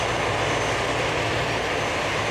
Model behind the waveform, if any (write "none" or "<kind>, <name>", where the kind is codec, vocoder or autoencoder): none